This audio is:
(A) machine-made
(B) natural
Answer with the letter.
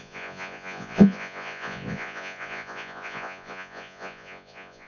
A